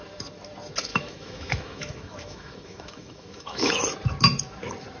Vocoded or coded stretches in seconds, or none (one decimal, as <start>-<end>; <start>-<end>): 0.9-3.7